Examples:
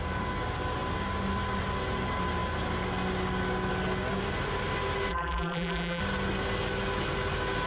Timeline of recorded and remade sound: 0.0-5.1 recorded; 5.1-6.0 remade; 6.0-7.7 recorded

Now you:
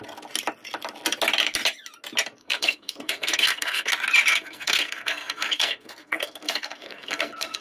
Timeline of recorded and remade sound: 0.0-2.4 recorded; 2.4-3.9 remade; 3.9-4.3 recorded; 4.3-7.6 remade

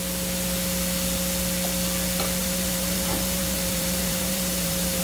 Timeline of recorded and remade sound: 0.0-2.4 recorded; 2.4-5.0 remade

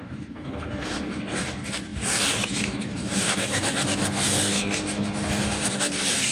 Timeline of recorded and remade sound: 0.0-6.3 remade

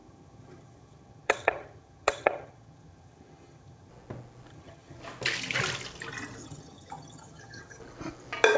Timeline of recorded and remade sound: 0.0-3.9 remade; 3.9-4.5 recorded; 4.5-5.0 remade; 5.0-6.4 recorded; 6.4-7.8 remade; 7.8-8.6 recorded